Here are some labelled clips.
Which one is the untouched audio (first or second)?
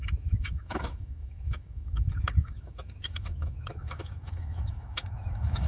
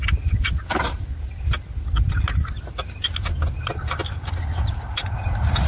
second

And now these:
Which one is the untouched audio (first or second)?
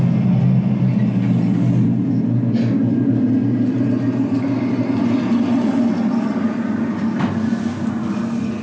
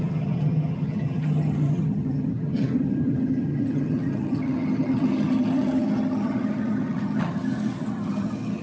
first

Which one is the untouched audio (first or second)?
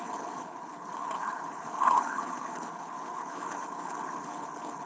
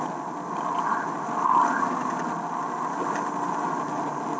second